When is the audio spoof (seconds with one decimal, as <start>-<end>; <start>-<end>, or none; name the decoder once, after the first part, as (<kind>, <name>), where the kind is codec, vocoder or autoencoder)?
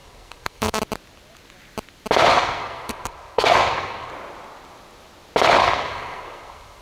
0.0-0.8 (codec, SNAC); 2.3-4.1; 5.6-6.8